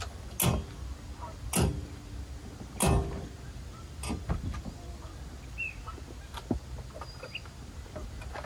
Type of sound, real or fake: real